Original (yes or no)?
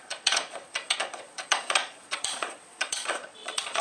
no